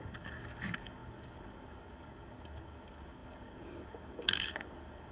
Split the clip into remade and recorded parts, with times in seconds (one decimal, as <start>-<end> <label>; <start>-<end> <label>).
0.0-5.1 remade